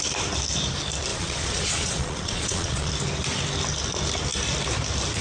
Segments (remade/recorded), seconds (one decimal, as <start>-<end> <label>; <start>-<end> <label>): 0.0-1.1 recorded; 1.1-2.9 remade; 2.9-5.2 recorded